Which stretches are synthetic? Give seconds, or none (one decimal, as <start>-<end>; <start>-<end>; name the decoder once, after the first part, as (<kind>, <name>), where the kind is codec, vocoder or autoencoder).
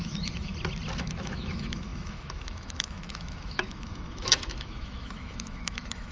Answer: 0.0-0.5 (autoencoder, DAC-VAE); 1.0-6.1